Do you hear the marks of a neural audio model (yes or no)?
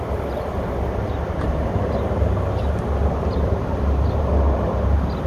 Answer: no